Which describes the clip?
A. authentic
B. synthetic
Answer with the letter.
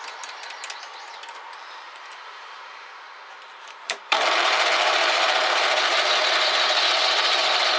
B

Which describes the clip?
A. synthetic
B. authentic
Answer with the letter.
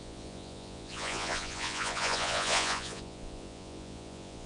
A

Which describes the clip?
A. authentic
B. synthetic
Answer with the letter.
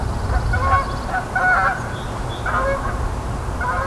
A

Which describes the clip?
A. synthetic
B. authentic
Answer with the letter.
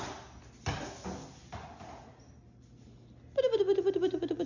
B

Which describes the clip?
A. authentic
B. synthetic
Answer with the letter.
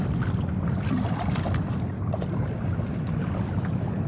A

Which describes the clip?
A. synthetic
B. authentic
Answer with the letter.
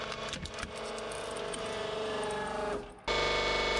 B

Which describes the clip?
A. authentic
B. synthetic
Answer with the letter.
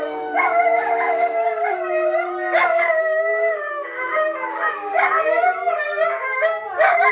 B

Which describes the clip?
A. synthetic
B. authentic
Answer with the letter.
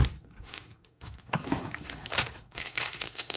A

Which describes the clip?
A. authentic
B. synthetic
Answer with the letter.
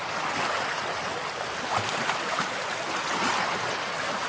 A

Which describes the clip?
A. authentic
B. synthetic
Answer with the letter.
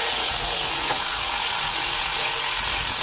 B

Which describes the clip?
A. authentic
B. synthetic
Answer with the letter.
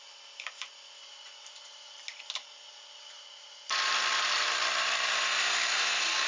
A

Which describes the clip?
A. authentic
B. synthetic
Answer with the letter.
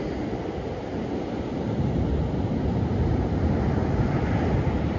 A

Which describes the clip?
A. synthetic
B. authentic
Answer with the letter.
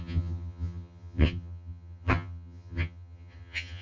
A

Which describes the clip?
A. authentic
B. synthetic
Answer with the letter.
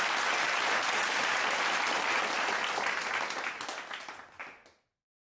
A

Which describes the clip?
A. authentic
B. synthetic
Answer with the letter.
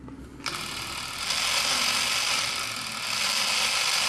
A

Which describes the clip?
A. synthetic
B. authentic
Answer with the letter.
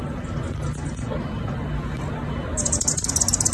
B